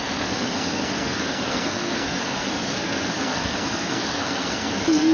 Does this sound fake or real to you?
fake